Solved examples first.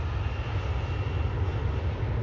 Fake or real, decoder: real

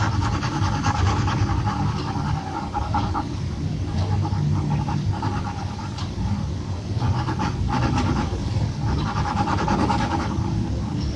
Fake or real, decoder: fake, codec, DAC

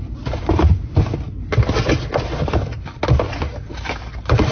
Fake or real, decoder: real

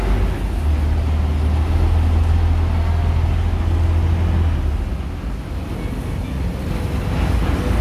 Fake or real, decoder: real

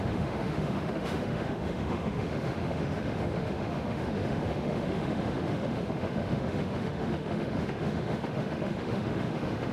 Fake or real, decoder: fake, autoencoder, DAC-VAE